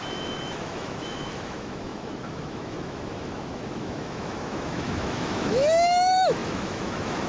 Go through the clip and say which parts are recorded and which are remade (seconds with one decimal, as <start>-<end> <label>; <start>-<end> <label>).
0.0-7.3 remade